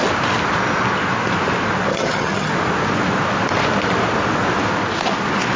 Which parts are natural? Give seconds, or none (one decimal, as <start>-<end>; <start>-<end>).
0.0-1.9; 2.5-5.6